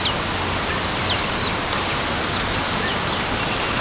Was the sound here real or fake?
real